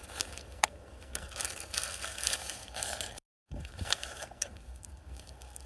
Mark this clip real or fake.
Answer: fake